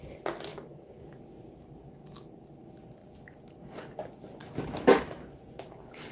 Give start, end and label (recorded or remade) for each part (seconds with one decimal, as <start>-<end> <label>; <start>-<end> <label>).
0.0-6.1 recorded